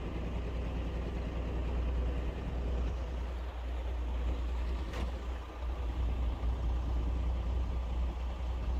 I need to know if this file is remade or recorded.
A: recorded